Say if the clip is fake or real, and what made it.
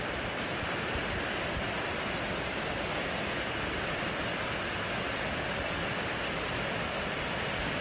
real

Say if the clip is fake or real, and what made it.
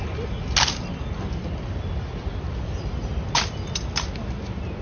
real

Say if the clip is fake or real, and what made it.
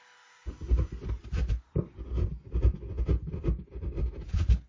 real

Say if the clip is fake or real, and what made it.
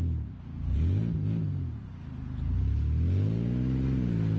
real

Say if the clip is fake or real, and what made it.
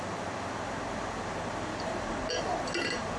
real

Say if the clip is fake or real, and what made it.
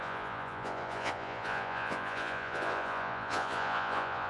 fake, vocoder, Vocos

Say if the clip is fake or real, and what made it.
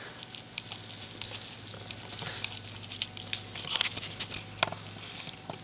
real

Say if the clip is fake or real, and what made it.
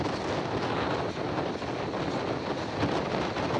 real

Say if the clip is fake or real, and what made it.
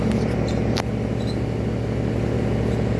real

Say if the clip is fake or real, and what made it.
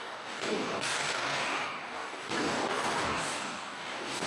fake, codec, DAC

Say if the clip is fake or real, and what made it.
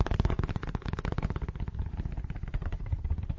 fake, vocoder, BigVGAN v2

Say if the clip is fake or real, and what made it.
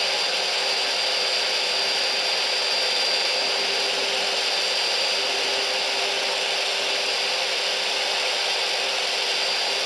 real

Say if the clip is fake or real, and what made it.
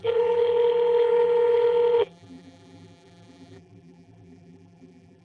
fake, vocoder, BigVGAN v2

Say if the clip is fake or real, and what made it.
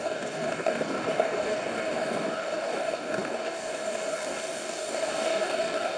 fake, codec, DAC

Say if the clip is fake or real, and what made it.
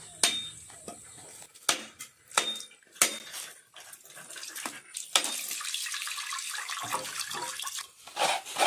real